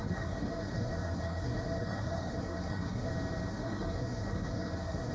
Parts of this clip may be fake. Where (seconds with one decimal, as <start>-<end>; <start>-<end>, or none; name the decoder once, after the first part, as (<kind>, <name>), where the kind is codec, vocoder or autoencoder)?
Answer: 0.0-3.1 (codec, SNAC); 3.5-5.1